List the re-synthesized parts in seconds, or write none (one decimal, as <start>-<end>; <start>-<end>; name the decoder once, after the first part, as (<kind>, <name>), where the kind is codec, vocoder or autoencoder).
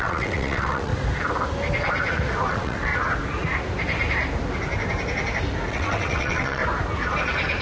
0.0-0.9 (vocoder, WaveNeXt); 2.5-2.9; 5.7-6.6